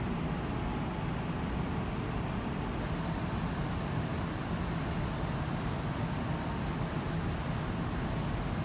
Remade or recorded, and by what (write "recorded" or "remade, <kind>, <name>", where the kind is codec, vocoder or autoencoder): recorded